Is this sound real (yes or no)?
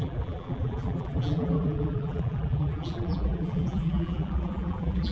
no